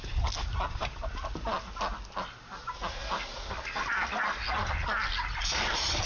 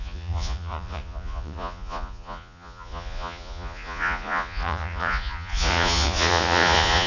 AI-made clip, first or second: second